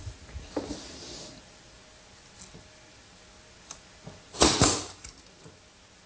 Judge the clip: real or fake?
real